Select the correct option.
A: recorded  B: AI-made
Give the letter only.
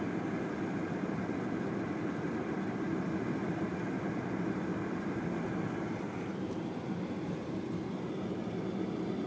A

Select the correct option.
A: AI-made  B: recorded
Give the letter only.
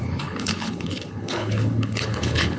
A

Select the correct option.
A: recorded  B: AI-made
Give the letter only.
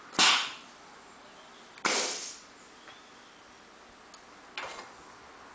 A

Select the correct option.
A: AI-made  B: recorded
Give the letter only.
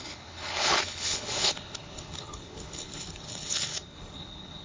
A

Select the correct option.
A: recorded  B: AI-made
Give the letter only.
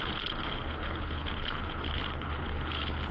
B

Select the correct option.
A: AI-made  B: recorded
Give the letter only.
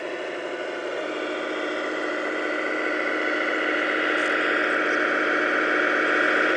B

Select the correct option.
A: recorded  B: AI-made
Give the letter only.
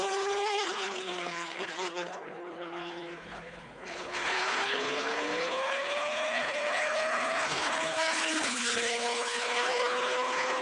B